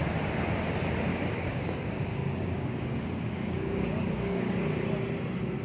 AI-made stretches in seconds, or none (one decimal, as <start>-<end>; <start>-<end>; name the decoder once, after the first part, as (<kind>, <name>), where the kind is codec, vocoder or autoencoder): 1.1-4.5 (codec, DAC)